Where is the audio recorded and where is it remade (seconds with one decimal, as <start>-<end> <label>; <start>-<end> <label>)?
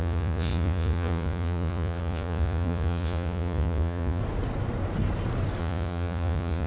0.0-4.2 remade; 4.2-5.6 recorded; 5.6-6.7 remade